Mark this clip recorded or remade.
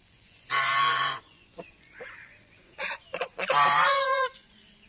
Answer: remade